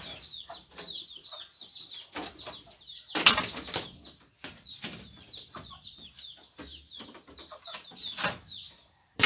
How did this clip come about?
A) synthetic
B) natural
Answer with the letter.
B